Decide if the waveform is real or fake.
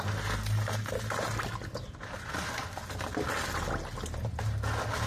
real